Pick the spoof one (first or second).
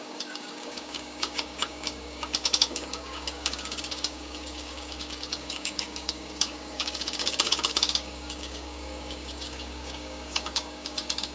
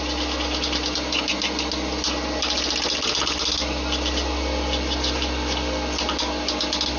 first